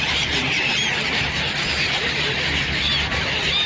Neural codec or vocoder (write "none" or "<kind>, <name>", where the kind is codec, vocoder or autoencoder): none